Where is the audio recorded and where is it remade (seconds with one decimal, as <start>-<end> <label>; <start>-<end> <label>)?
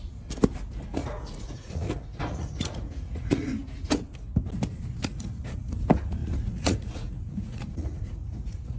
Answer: 0.0-1.0 recorded; 1.0-3.5 remade; 3.5-5.1 recorded; 5.1-5.7 remade; 5.7-6.2 recorded; 6.2-8.8 remade